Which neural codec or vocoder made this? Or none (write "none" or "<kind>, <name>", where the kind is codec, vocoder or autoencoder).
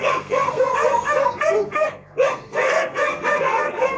codec, SNAC